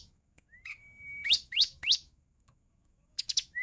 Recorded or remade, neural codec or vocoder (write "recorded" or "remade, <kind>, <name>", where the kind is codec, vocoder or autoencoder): remade, autoencoder, DAC-VAE